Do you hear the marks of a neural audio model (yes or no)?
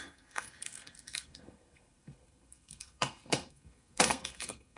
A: yes